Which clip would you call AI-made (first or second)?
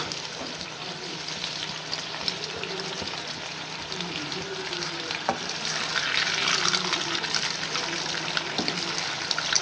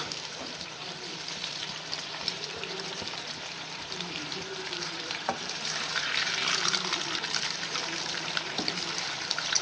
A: second